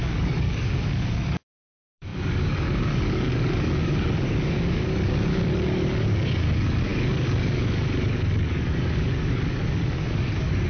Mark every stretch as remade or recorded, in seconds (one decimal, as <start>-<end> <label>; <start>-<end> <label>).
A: 0.0-10.7 remade